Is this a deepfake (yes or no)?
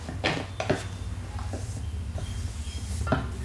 no